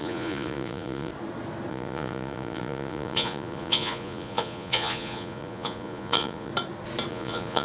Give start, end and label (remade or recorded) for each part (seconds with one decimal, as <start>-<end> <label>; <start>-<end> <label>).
0.0-1.1 remade; 1.1-1.7 recorded; 1.7-6.5 remade; 6.5-7.1 recorded; 7.1-7.6 remade